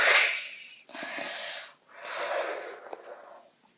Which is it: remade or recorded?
recorded